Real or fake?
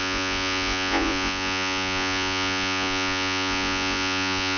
fake